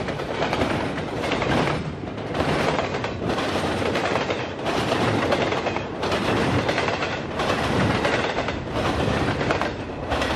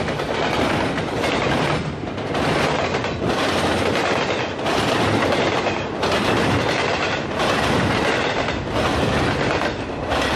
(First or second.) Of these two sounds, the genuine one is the second